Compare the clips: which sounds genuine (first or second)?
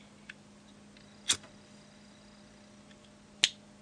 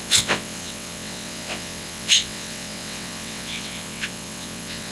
first